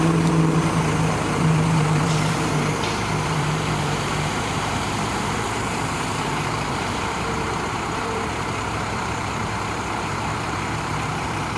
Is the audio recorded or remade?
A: remade